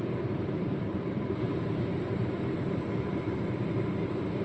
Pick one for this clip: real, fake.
fake